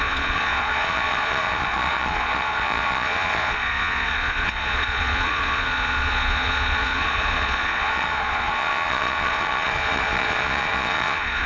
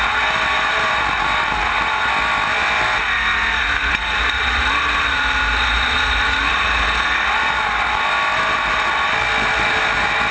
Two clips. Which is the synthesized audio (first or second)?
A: first